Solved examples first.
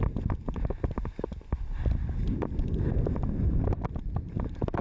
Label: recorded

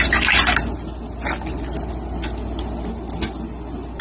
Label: recorded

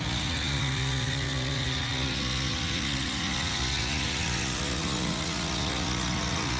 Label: remade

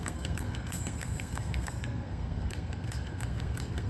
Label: remade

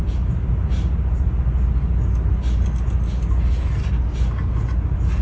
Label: recorded